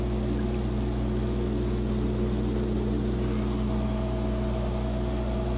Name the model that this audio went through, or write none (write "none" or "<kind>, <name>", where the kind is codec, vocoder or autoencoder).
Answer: none